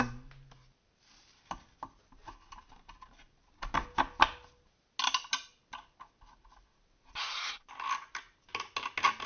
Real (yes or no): yes